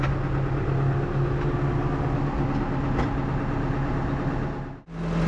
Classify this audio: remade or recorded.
recorded